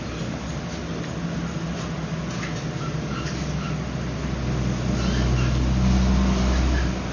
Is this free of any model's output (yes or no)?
yes